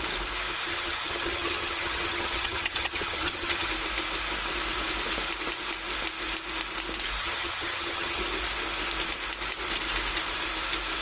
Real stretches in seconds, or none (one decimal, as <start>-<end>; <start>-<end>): 0.0-0.7; 3.7-7.2; 8.2-11.0